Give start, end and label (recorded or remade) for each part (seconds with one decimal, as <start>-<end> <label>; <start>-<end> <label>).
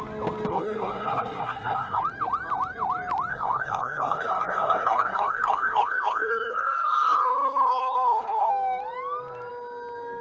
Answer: 0.0-0.5 recorded; 0.5-2.0 remade; 2.0-3.3 recorded; 3.3-8.5 remade; 8.5-10.2 recorded